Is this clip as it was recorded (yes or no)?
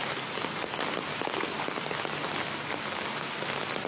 yes